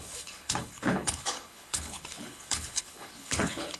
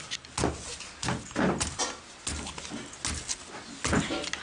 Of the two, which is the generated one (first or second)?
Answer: first